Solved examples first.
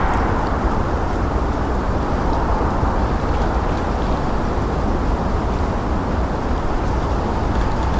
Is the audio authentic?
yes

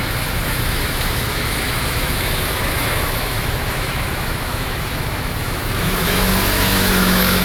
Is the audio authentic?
no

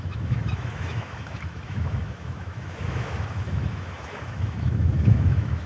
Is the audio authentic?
no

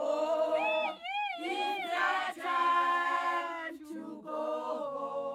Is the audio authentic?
no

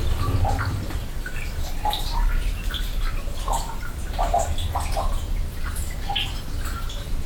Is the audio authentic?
yes